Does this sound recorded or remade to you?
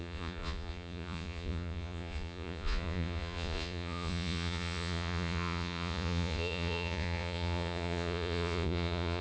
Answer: remade